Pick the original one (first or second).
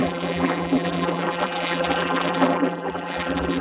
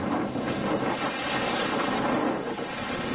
second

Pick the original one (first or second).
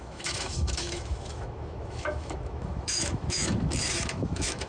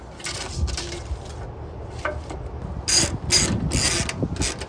second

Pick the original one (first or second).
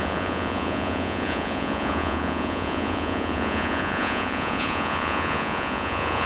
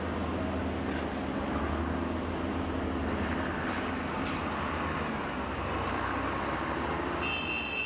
second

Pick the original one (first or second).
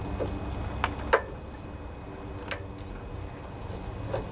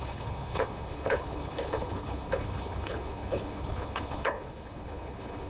first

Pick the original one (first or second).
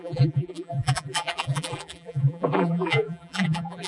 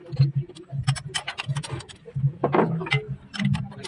second